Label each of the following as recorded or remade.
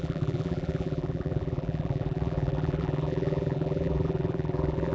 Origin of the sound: remade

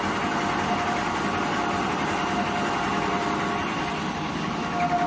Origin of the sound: recorded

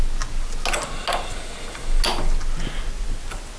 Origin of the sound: recorded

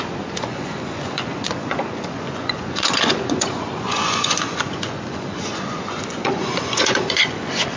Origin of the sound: remade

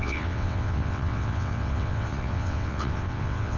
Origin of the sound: remade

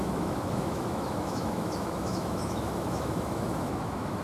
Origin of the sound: remade